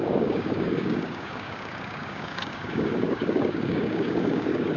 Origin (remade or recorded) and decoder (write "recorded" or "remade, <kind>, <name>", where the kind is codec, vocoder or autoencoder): remade, codec, DAC